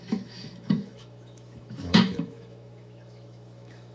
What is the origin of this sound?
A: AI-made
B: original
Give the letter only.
A